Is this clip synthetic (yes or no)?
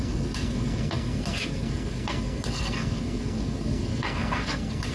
yes